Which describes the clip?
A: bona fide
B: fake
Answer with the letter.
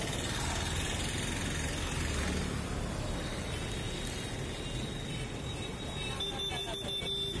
A